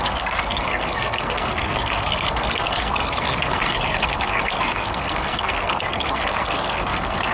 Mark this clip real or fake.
fake